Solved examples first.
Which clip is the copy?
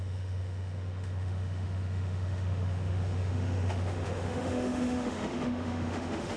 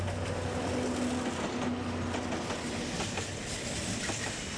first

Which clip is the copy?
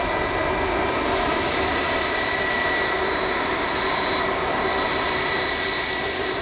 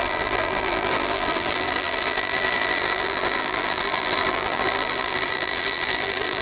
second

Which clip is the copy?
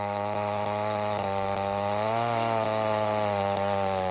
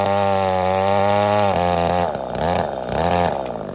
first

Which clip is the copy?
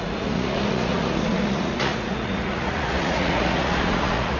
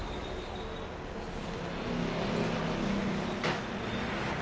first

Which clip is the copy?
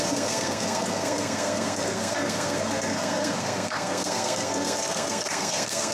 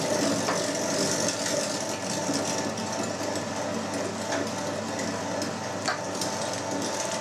first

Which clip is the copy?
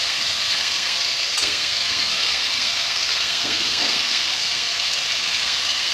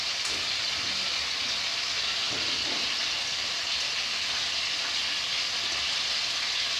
first